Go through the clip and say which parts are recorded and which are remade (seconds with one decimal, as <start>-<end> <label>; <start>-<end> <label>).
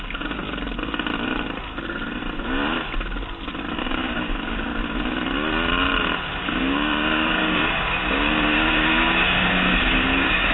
0.0-0.4 remade; 0.4-3.7 recorded; 3.7-4.7 remade; 4.7-6.4 recorded; 6.4-10.5 remade